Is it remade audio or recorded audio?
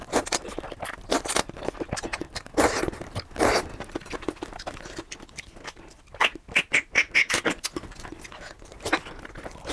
recorded